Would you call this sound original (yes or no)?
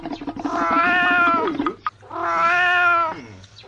yes